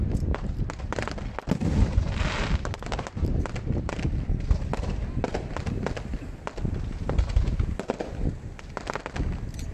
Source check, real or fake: real